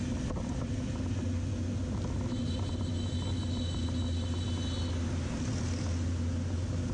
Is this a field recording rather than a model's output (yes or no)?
yes